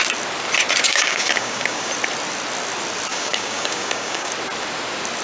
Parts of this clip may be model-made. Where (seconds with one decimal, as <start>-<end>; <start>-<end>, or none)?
0.9-1.9; 3.1-4.3